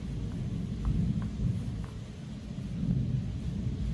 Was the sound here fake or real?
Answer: real